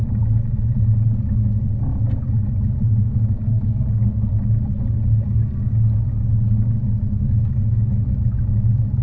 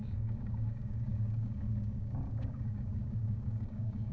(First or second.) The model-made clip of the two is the second